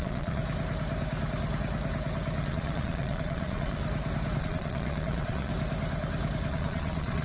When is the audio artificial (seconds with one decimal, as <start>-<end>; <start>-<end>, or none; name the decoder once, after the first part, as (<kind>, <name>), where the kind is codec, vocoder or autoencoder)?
0.0-0.4 (vocoder, Vocos); 2.4-3.8; 4.4-5.5; 6.5-7.2